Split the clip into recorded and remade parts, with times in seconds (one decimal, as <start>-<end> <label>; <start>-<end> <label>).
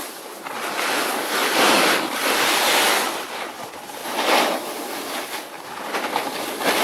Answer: 0.0-6.8 recorded